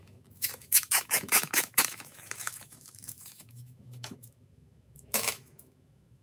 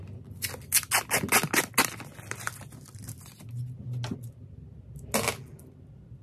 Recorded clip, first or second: second